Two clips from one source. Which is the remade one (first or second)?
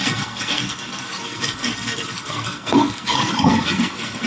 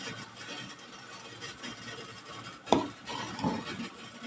first